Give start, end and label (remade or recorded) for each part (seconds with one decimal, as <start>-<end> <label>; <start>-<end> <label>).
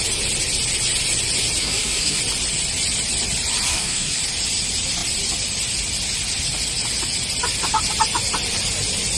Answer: 0.0-1.6 recorded; 1.6-2.2 remade; 2.2-3.7 recorded; 3.7-4.2 remade; 4.2-9.2 recorded